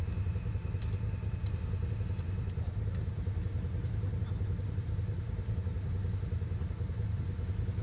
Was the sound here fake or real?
real